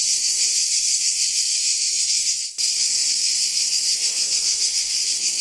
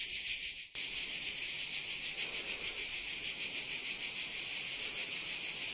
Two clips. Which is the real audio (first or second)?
second